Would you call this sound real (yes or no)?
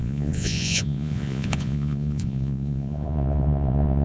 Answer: no